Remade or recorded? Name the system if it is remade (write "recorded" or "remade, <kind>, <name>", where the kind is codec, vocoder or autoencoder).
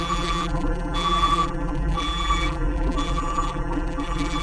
remade, vocoder, BigVGAN v2